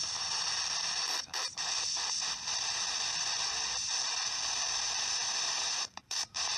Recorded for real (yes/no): no